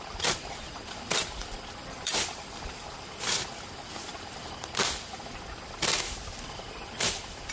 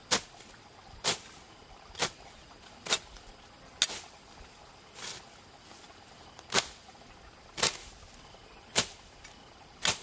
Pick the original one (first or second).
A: second